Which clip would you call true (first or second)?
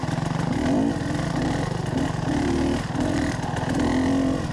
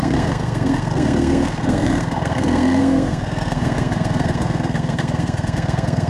first